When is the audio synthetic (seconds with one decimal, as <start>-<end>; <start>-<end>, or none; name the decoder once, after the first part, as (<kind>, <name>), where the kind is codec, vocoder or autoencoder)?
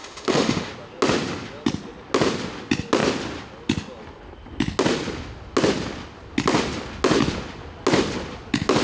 0.0-0.7 (autoencoder, DAC-VAE)